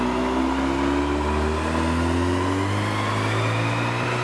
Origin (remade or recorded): recorded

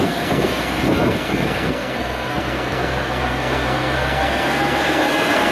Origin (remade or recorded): remade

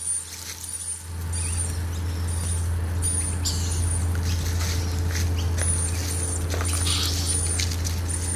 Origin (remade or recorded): recorded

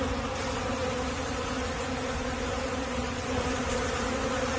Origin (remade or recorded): recorded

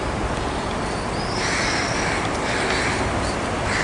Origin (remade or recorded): recorded